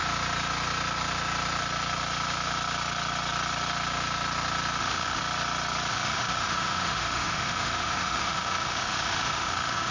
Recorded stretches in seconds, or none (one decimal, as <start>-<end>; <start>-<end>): 0.0-4.8; 5.2-5.9